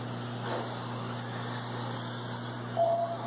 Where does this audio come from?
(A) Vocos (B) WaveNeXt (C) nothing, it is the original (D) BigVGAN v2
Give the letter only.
C